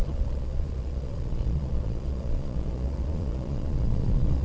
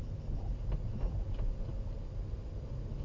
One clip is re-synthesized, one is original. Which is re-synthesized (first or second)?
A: first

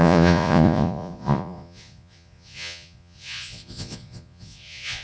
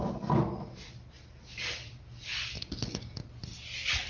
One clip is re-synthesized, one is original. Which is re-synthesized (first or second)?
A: first